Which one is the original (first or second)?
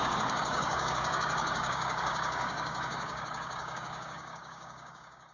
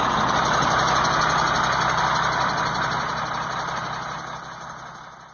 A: second